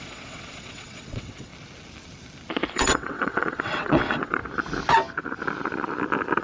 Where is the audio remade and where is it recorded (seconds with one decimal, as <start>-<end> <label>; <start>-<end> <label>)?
0.0-1.5 remade; 1.5-2.7 recorded; 2.7-4.4 remade; 4.4-6.4 recorded